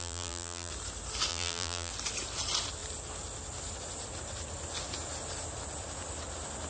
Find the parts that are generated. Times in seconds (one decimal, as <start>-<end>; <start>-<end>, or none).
0.0-0.7; 1.3-1.9